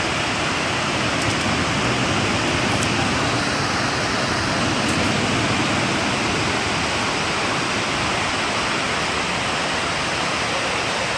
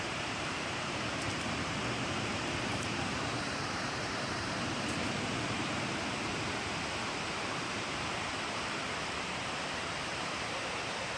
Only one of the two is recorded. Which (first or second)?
first